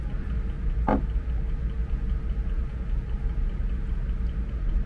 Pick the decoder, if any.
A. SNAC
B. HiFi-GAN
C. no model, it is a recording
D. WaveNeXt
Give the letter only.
C